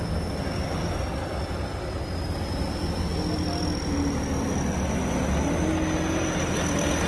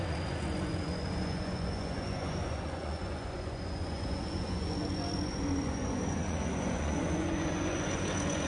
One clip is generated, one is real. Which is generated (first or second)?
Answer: second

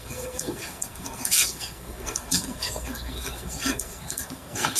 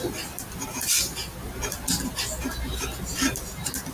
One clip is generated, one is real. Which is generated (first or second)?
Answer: first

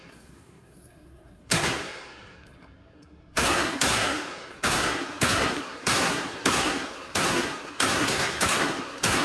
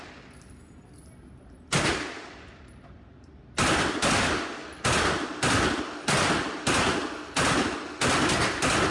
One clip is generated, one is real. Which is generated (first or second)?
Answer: first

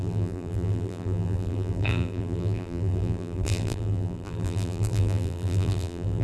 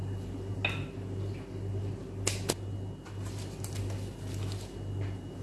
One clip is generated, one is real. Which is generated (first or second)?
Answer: first